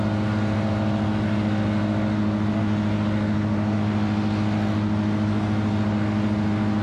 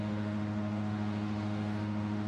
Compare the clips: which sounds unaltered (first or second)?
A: first